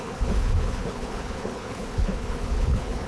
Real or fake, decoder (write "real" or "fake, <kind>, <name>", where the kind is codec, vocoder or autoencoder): fake, codec, HILCodec